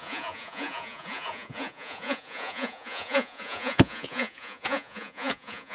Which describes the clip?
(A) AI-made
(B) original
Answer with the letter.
A